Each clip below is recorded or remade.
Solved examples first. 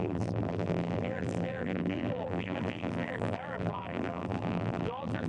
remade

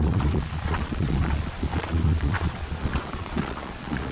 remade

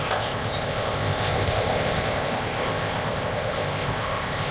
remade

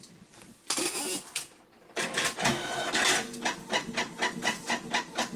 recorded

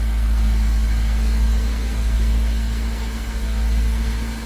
remade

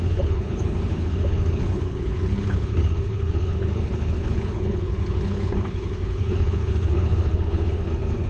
remade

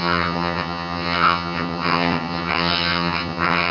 remade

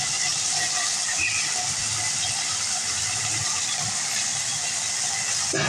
recorded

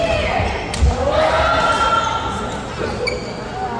recorded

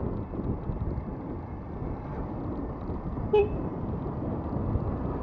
recorded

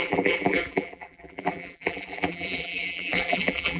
remade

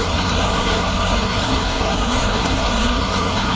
remade